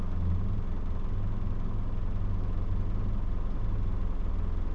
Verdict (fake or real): real